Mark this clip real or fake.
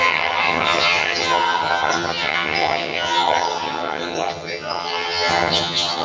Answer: fake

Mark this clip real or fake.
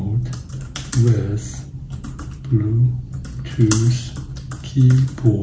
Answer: real